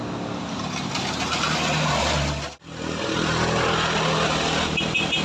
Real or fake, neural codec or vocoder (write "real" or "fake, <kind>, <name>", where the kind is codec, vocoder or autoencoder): real